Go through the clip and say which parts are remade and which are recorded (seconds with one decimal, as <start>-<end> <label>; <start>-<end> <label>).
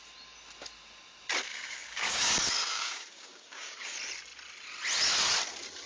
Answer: 0.0-1.5 recorded; 1.5-2.2 remade; 2.2-2.6 recorded; 2.6-3.9 remade; 3.9-5.9 recorded